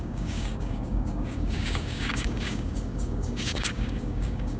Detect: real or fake fake